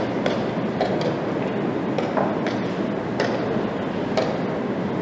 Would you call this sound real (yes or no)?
yes